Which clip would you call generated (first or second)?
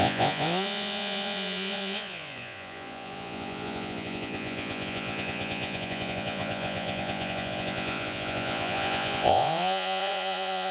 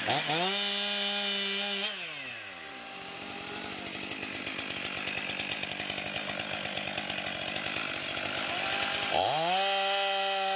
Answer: first